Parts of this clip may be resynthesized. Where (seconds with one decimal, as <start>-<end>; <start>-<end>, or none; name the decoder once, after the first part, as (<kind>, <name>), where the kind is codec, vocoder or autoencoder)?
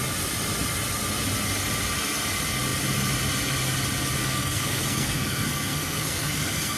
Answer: 4.2-6.8 (codec, SNAC)